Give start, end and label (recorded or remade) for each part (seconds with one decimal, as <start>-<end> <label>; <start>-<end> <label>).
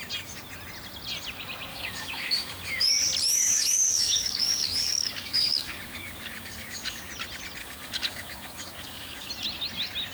0.0-1.7 recorded; 1.7-2.9 remade; 2.9-3.3 recorded; 3.3-7.1 remade; 7.1-7.6 recorded; 7.6-9.3 remade; 9.3-10.1 recorded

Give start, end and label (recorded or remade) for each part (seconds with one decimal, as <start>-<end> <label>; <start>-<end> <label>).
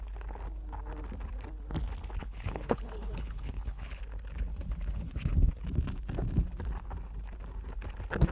0.0-2.2 recorded; 2.2-4.0 remade; 4.0-4.5 recorded; 4.5-5.5 remade; 5.5-8.3 recorded